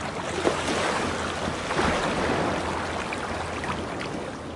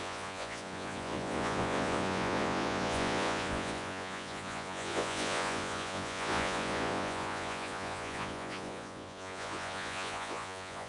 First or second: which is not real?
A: second